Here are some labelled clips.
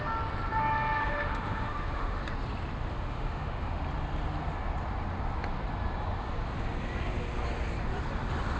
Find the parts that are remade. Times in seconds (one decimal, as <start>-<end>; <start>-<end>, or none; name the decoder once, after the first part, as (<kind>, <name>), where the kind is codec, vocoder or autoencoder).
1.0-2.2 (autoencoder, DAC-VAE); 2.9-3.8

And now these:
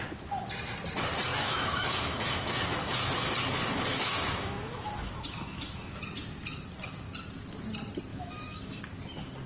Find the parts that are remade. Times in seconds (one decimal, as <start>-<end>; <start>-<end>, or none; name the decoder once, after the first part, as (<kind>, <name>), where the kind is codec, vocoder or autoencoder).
1.3-3.3 (autoencoder, DAC-VAE); 3.9-6.0; 8.1-8.8

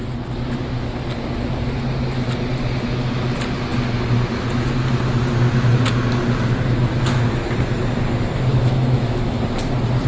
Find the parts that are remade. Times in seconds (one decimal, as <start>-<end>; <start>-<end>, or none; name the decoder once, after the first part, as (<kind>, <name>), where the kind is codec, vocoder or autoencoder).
8.5-9.4 (autoencoder, DAC-VAE)

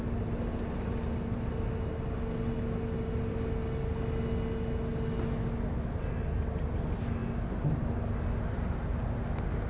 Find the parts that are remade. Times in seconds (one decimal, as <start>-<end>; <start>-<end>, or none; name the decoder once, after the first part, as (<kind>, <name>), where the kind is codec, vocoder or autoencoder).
none

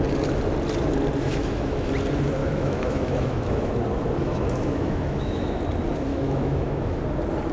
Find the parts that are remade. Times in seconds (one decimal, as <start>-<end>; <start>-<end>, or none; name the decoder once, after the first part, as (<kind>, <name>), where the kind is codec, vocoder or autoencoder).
1.3-1.9 (autoencoder, DAC-VAE); 2.4-3.7; 4.2-5.6; 6.1-7.0

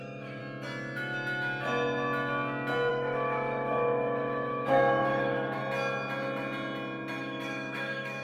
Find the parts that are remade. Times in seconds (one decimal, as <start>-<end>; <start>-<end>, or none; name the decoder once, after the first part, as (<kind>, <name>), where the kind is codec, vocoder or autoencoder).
0.0-0.4 (autoencoder, DAC-VAE); 2.9-5.6; 7.2-8.2